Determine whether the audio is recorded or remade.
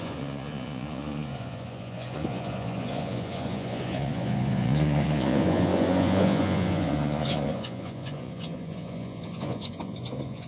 remade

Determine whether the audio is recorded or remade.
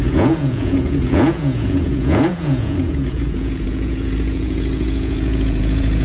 remade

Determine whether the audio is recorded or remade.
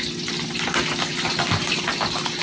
recorded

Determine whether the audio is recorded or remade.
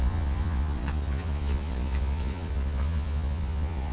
remade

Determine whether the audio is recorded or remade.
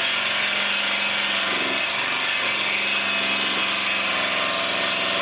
recorded